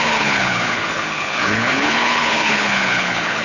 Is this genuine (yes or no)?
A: no